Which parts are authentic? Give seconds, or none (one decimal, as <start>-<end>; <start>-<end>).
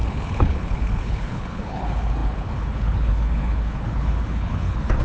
none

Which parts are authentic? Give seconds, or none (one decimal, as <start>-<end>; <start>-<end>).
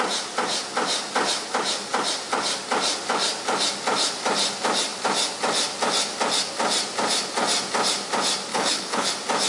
0.0-8.5; 9.1-9.5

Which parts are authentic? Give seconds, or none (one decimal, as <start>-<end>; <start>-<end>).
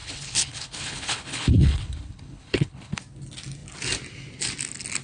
3.0-5.0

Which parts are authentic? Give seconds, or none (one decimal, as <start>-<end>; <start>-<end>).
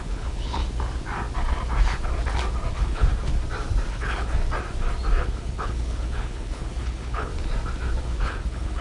0.6-2.7; 3.1-3.9; 4.4-5.2; 7.3-8.0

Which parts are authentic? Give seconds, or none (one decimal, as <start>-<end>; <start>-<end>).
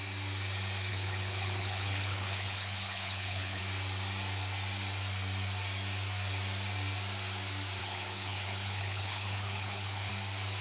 0.0-0.9; 3.6-7.8; 10.1-10.6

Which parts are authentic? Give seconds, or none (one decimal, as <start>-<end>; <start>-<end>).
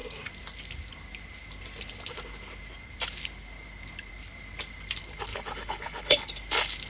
0.0-5.3; 6.3-6.9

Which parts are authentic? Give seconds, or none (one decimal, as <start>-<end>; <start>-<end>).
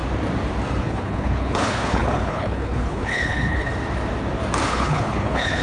0.0-0.8; 3.7-4.7